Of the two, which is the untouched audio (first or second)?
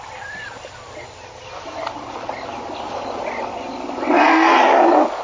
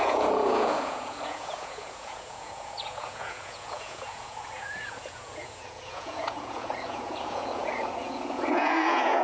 first